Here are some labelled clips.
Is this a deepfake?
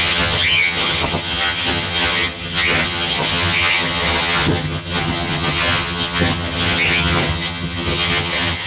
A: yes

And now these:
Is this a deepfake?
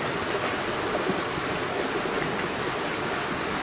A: no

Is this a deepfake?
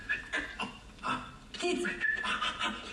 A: no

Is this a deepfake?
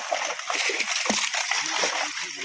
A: no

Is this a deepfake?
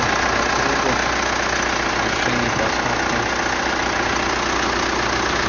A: no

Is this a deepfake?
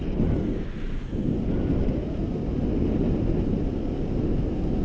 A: no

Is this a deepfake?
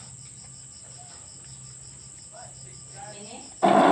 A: no